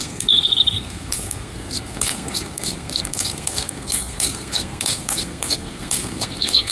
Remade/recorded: remade